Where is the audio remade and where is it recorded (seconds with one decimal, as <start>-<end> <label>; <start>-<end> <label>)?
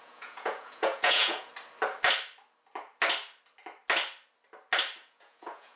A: 0.0-1.5 remade; 1.5-5.0 recorded; 5.0-5.8 remade